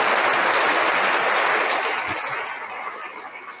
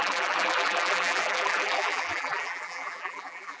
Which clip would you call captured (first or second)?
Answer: first